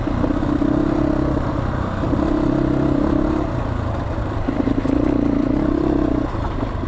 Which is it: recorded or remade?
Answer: recorded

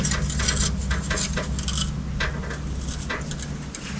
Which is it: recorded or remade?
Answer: recorded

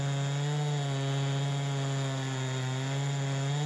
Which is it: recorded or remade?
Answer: recorded